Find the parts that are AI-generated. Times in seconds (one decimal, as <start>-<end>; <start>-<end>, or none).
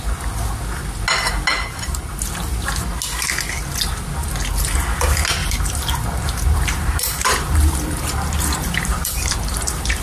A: 1.5-2.2; 5.4-10.0